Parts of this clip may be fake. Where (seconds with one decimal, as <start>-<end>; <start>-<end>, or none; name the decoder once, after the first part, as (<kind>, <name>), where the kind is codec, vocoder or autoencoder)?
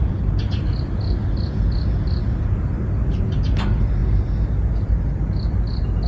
none